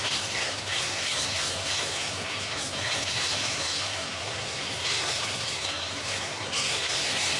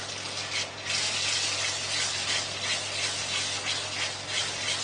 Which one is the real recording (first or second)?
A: second